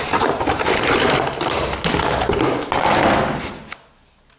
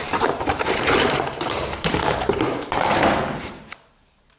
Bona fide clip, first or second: first